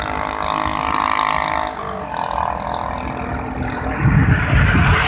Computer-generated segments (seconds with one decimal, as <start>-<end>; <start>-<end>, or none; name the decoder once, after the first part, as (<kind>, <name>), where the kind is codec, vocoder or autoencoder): none